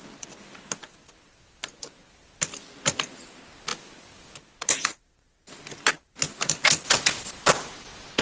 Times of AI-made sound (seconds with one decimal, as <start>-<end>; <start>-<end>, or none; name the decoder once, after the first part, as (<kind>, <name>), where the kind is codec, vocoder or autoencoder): none